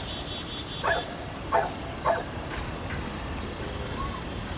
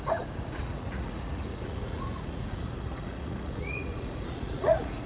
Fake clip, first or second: second